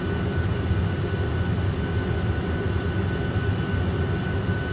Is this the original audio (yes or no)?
yes